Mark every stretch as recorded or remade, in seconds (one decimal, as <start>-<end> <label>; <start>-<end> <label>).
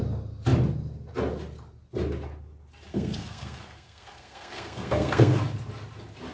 0.0-2.9 recorded; 2.9-5.4 remade; 5.4-6.3 recorded